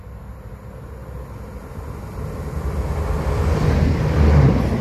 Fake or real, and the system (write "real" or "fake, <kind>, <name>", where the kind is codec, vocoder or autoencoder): real